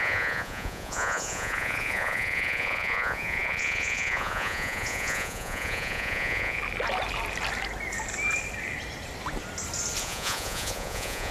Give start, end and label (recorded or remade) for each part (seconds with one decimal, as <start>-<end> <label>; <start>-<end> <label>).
0.0-6.6 remade; 6.6-10.0 recorded; 10.0-11.3 remade